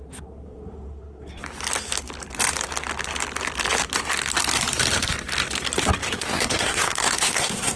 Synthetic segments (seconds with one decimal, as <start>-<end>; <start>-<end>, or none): 0.0-1.4; 6.1-7.8